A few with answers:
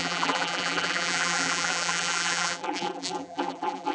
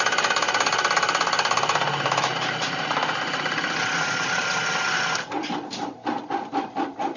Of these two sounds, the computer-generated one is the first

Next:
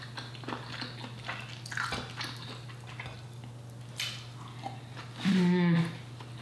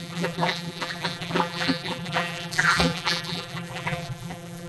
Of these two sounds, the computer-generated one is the second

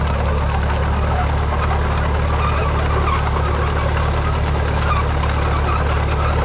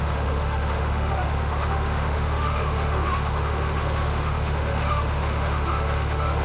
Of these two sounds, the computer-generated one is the second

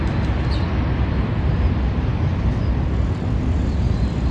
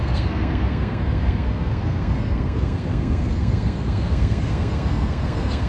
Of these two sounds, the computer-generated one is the second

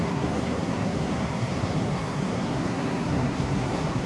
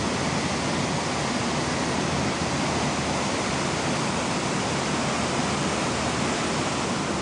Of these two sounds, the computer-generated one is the first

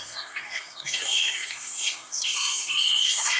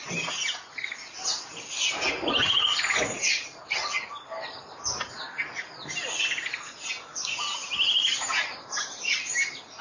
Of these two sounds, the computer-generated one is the first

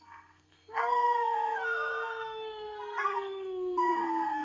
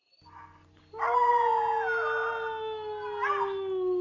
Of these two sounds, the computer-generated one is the first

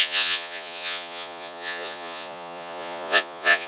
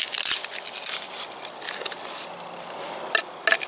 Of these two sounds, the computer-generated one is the first